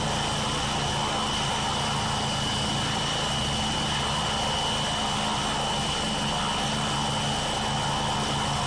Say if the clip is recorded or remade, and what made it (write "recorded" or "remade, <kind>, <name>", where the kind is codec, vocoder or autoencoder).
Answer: recorded